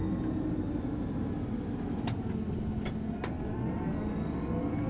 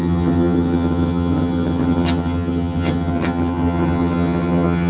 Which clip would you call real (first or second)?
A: first